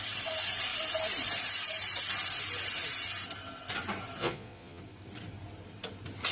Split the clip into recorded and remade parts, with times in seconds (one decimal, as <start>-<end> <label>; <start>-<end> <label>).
0.0-4.2 recorded; 4.2-4.8 remade; 4.8-6.3 recorded